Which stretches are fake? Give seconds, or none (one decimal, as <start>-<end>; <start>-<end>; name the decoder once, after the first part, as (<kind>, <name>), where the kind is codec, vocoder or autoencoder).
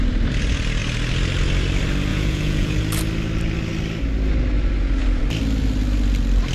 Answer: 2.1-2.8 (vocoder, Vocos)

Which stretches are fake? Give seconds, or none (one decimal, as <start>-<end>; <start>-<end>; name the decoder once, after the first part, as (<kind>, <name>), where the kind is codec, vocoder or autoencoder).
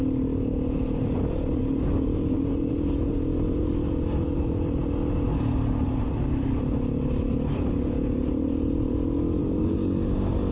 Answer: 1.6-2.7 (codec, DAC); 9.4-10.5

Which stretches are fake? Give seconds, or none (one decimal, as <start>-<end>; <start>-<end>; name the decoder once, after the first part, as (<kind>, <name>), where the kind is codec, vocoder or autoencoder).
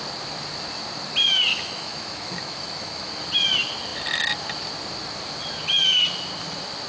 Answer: 1.5-3.2 (autoencoder, DAC-VAE)